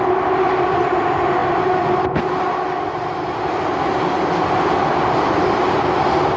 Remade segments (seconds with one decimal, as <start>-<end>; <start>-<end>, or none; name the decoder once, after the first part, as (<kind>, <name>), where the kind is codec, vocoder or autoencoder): none